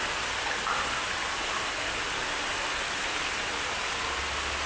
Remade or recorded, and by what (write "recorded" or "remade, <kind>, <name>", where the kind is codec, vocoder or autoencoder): recorded